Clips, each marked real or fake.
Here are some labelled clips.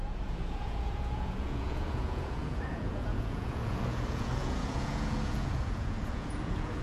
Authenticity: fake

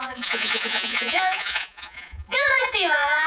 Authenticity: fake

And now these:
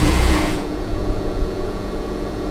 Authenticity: fake